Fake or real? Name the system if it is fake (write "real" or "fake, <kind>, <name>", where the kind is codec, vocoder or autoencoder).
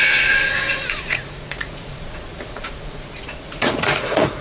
fake, vocoder, Vocos